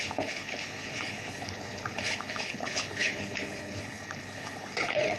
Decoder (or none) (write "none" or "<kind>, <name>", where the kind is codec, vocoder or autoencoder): codec, HILCodec